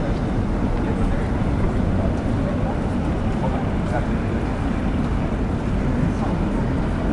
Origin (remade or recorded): recorded